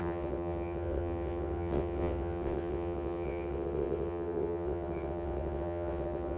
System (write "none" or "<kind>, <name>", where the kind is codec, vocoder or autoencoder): vocoder, WaveNeXt